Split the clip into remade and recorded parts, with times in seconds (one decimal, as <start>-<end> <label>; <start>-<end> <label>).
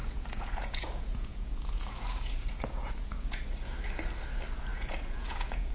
0.0-3.4 remade; 3.4-4.7 recorded; 4.7-5.7 remade